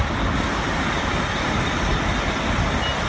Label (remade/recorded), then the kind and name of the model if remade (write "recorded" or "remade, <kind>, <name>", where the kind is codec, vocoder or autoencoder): recorded